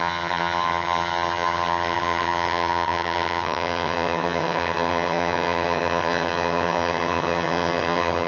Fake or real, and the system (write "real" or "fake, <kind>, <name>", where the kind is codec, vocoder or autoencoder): fake, vocoder, HiFi-GAN